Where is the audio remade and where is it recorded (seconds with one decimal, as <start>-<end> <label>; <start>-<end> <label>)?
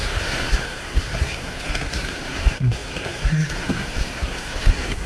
0.0-5.1 remade